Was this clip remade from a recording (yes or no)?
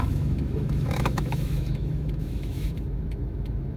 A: yes